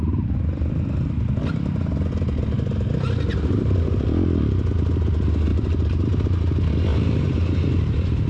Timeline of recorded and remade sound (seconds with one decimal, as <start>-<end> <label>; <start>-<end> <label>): 0.0-3.3 recorded; 3.3-3.9 remade; 3.9-5.5 recorded; 5.5-6.1 remade; 6.1-6.9 recorded; 6.9-8.3 remade